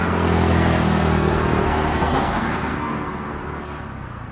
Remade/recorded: remade